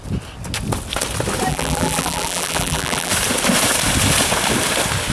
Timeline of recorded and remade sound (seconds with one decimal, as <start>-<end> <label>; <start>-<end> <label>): 0.0-1.5 recorded; 1.5-3.1 remade; 3.1-5.1 recorded